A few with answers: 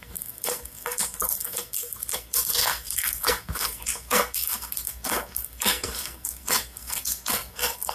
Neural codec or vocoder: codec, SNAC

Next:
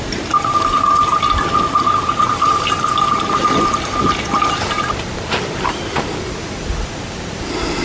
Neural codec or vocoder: none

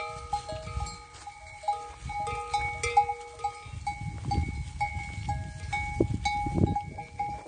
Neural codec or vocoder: none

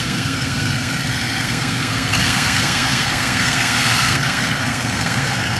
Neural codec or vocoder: codec, SNAC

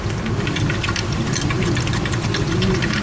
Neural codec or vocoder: none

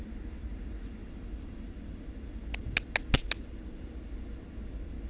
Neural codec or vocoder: none